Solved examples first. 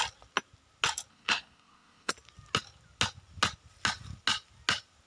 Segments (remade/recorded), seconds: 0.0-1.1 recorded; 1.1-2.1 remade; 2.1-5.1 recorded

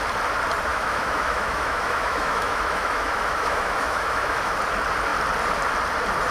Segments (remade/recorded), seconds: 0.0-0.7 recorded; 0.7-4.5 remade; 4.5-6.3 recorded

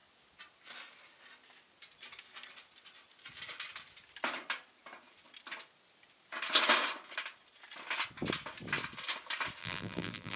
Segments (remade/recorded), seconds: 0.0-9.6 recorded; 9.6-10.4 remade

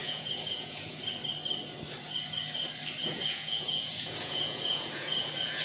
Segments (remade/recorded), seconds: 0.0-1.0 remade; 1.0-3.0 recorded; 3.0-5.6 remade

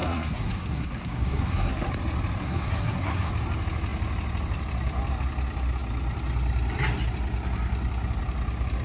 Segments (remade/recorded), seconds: 0.0-1.7 remade; 1.7-2.4 recorded; 2.4-3.3 remade; 3.3-8.8 recorded

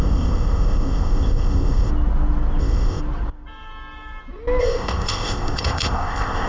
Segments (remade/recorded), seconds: 0.0-1.9 remade; 1.9-2.6 recorded; 2.6-3.0 remade; 3.0-4.6 recorded; 4.6-6.5 remade